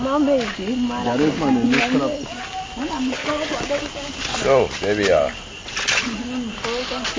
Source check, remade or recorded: recorded